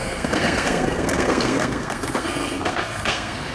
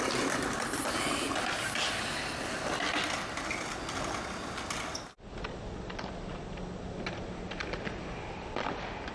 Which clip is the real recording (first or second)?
second